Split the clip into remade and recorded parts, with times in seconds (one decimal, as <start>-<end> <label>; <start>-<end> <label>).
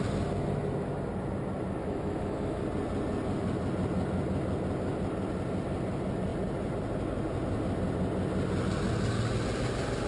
0.0-1.8 recorded; 1.8-2.6 remade; 2.6-10.1 recorded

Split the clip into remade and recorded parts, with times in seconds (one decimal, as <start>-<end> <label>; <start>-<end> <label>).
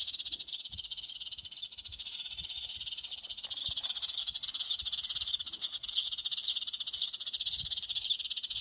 0.0-8.6 recorded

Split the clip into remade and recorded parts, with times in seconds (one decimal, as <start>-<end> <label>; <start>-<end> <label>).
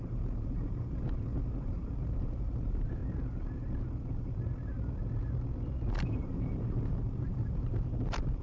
0.0-3.0 remade; 3.0-5.9 recorded; 5.9-8.4 remade